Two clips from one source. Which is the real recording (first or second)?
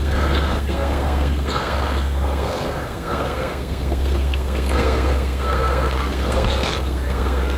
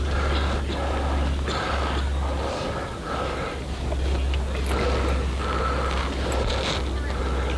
second